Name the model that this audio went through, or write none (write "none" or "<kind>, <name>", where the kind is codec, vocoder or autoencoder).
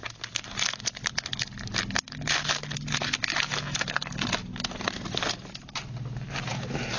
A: none